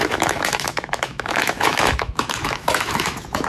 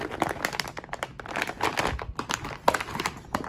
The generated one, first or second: first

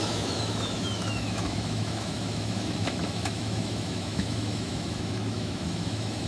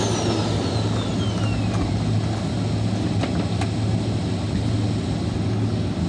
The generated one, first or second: first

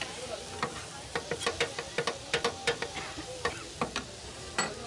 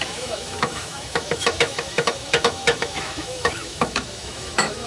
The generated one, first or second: second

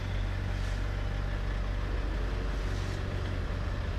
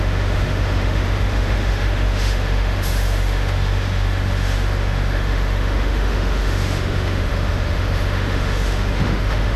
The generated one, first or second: second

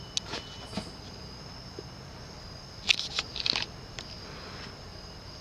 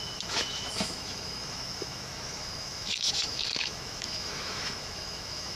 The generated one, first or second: second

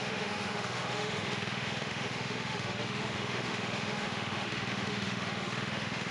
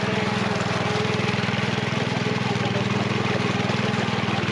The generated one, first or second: first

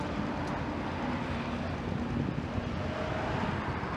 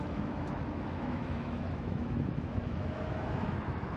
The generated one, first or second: second